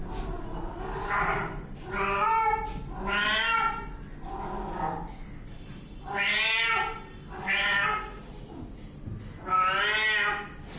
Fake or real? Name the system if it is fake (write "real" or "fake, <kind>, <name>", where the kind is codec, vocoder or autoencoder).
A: real